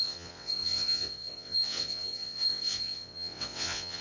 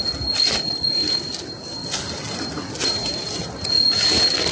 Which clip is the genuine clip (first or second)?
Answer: second